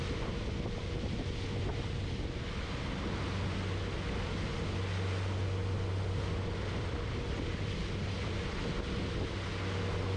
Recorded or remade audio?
recorded